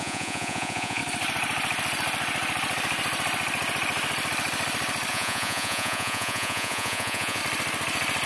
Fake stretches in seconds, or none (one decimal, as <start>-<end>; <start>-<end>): 0.0-1.0; 5.1-7.4